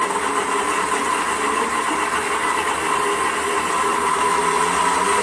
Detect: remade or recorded recorded